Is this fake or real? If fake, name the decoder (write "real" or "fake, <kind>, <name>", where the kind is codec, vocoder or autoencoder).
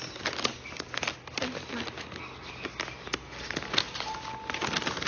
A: real